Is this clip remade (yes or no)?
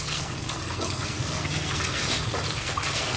yes